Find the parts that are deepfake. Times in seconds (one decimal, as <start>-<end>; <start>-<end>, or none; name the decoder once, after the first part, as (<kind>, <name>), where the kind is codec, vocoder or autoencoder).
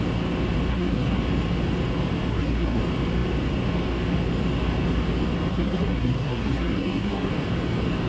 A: 0.7-1.2 (codec, SNAC); 2.3-2.8; 5.5-7.3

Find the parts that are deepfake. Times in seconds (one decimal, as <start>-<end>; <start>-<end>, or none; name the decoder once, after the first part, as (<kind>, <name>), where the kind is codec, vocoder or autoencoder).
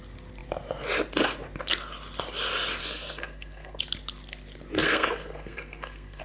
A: 2.8-3.8 (codec, SNAC); 4.8-6.2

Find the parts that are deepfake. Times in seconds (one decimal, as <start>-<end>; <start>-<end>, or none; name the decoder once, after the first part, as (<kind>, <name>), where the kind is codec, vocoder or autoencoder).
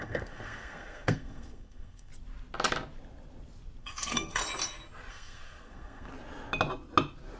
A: 0.0-2.1 (codec, SNAC); 3.8-4.4; 5.1-6.1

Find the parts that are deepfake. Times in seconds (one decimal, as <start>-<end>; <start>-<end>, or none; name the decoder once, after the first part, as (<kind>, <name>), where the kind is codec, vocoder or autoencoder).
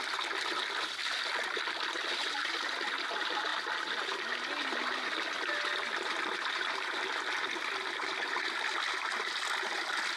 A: none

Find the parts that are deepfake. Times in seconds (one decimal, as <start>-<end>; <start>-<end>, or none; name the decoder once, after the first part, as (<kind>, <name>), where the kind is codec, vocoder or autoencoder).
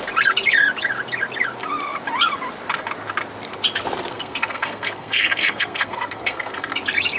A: 4.1-6.8 (codec, SNAC)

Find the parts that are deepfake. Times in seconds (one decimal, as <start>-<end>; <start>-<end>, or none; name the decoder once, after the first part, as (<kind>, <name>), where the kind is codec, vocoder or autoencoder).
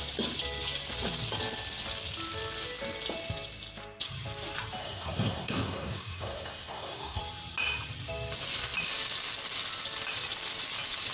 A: 4.8-7.2 (codec, SNAC)